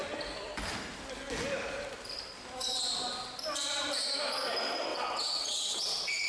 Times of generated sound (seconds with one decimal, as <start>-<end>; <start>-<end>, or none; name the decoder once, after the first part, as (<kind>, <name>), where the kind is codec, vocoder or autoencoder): 4.9-6.3 (vocoder, WaveNeXt)